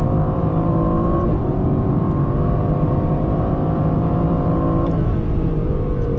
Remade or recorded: remade